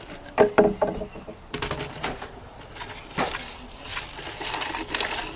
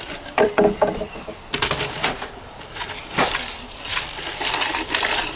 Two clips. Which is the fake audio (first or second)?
second